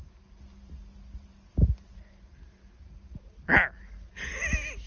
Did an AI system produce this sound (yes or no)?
no